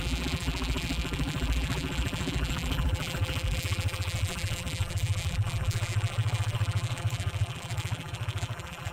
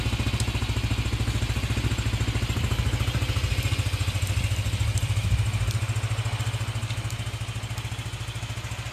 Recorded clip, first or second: second